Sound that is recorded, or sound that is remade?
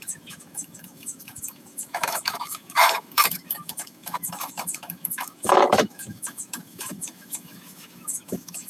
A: remade